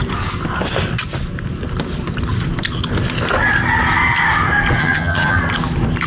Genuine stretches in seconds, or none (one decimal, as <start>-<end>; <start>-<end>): 0.0-4.8; 5.4-6.1